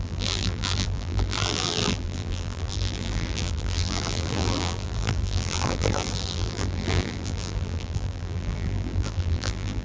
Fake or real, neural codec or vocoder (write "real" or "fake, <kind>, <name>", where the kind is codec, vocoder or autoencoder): fake, vocoder, BigVGAN v2